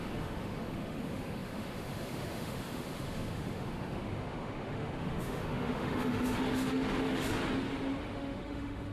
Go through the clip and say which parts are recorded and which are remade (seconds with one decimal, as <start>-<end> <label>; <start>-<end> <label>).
0.0-7.4 remade; 7.4-8.0 recorded; 8.0-8.9 remade